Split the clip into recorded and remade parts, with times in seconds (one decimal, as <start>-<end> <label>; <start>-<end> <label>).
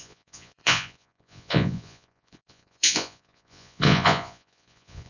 0.0-5.1 remade